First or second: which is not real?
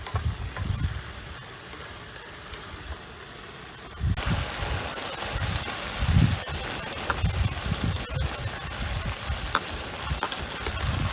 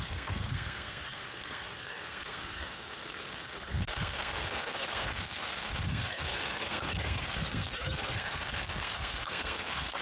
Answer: second